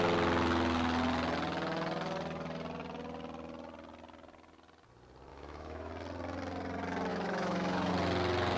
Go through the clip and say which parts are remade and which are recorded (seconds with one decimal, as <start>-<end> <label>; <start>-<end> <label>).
0.0-5.3 recorded; 5.3-5.9 remade; 5.9-7.1 recorded; 7.1-7.9 remade; 7.9-8.6 recorded